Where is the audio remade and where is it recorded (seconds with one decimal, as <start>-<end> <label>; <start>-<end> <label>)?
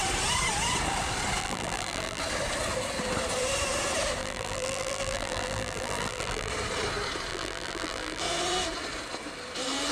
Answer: 0.0-1.4 recorded; 1.4-2.2 remade; 2.2-4.2 recorded; 4.2-6.5 remade; 6.5-7.3 recorded; 7.3-8.2 remade; 8.2-9.9 recorded